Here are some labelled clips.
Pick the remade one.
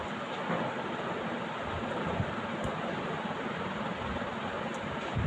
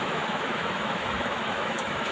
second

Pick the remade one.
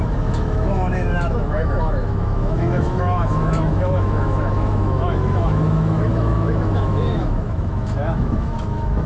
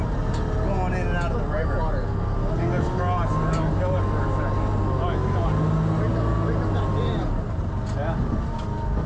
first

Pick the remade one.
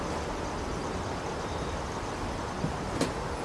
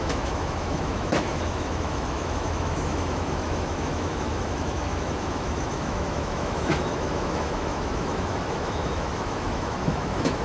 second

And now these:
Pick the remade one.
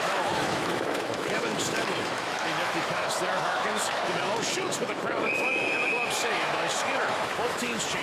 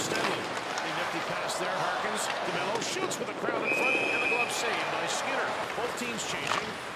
first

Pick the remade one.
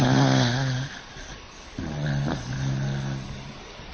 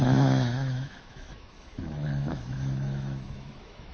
second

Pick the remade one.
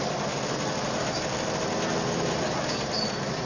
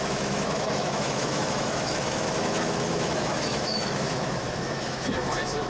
second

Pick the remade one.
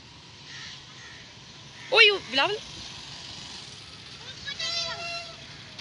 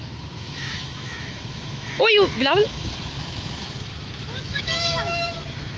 second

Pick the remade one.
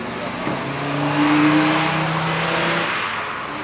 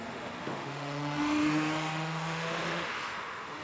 second